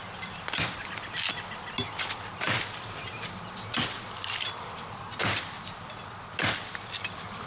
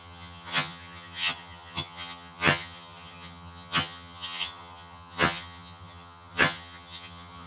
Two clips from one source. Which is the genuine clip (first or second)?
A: first